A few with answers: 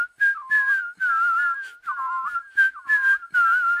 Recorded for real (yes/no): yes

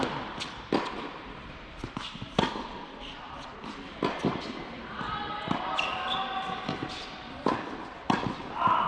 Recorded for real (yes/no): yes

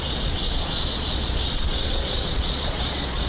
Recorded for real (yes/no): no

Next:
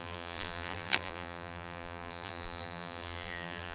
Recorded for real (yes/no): no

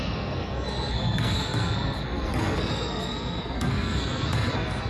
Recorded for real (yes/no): no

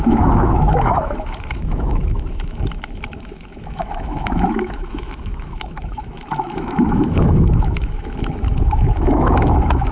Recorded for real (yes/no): no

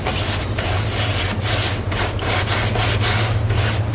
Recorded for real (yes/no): yes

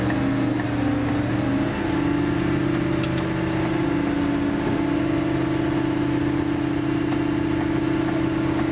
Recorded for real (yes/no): yes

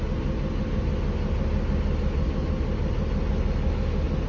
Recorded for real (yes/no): yes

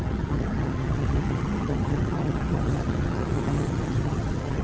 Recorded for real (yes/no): no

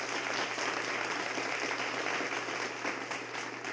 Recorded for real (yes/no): yes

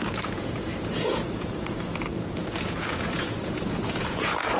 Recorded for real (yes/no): no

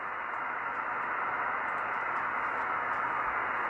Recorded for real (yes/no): yes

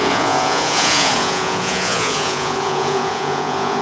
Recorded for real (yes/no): no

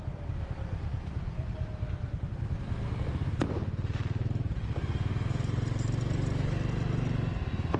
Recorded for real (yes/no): yes